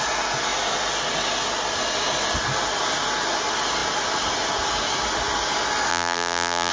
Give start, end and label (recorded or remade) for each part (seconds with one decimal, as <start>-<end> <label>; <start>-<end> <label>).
0.0-5.9 recorded; 5.9-6.7 remade